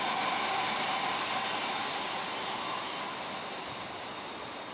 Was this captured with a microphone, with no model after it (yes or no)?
yes